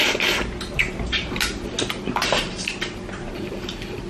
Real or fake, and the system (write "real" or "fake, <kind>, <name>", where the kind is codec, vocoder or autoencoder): real